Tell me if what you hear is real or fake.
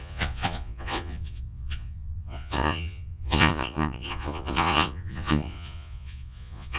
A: fake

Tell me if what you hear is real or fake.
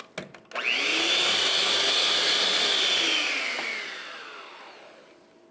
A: real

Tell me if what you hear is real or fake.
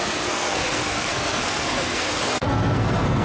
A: fake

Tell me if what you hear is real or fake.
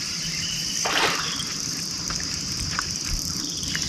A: fake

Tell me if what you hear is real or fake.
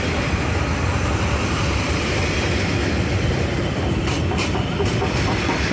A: fake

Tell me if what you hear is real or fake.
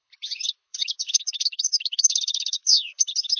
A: fake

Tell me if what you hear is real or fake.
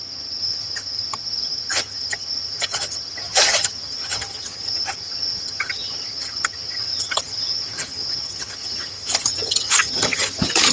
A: fake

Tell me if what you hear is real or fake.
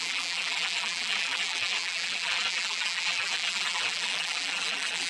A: fake